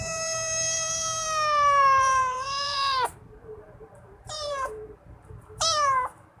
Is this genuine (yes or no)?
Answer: no